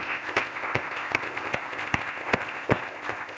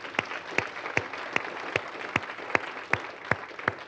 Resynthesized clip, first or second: first